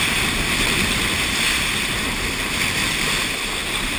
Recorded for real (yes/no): yes